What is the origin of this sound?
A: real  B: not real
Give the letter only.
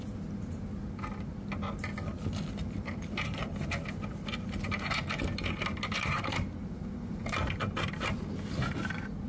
A